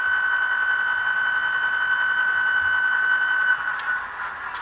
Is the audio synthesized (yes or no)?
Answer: no